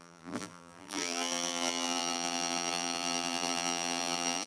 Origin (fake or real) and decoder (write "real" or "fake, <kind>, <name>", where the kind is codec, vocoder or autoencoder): fake, vocoder, BigVGAN v2